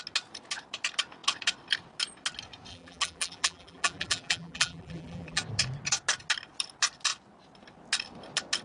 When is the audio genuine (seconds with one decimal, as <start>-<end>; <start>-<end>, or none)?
0.0-2.7; 5.4-8.6